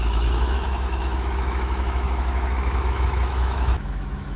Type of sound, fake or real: fake